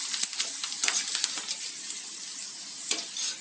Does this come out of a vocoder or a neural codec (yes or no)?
no